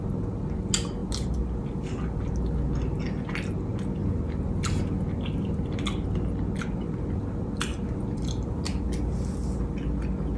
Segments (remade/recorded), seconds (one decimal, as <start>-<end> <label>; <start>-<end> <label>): 0.0-10.4 recorded